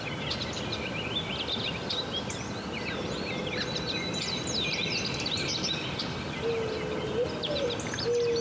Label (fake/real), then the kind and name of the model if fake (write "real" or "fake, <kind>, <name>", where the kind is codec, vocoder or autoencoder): real